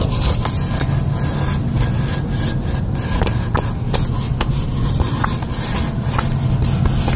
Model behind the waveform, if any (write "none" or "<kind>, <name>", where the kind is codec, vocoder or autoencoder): none